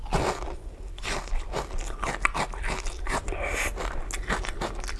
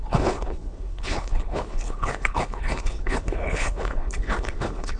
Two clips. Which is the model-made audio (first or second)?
second